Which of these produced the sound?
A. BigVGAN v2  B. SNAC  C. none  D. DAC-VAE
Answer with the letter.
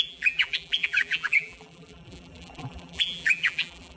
A